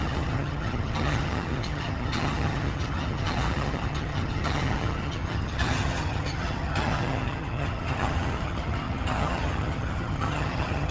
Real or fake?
fake